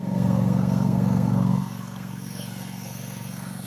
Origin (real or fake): fake